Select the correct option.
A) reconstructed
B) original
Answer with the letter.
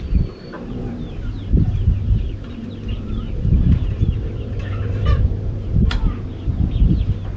A